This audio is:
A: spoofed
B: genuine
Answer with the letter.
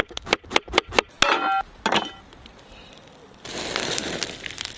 B